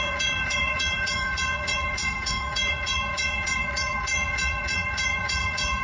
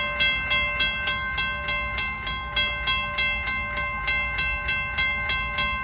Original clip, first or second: second